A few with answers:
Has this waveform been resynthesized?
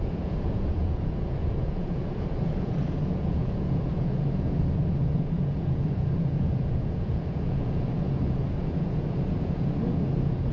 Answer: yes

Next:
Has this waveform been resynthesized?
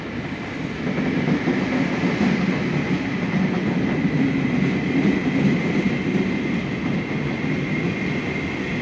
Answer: no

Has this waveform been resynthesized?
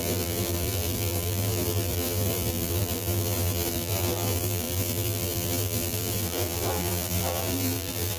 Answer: yes